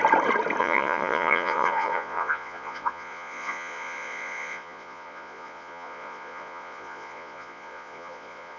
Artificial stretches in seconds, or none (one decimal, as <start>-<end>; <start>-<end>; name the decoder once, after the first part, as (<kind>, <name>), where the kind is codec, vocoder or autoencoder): 0.6-8.6 (vocoder, Vocos)